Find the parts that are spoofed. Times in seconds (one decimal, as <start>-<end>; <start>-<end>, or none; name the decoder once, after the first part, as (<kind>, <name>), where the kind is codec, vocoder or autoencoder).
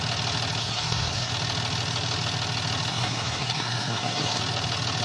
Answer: 0.6-1.3 (codec, SNAC); 2.9-4.4